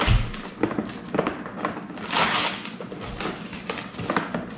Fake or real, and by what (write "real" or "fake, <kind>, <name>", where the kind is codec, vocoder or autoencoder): real